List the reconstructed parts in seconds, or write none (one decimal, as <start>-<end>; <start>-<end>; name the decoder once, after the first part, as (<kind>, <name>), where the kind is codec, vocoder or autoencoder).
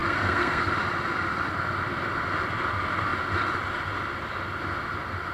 0.0-0.7 (codec, SNAC)